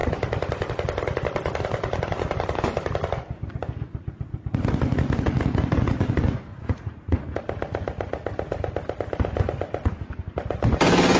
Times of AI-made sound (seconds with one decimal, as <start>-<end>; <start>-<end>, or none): 6.5-7.2